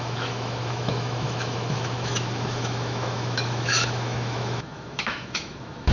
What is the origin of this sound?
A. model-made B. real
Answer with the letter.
A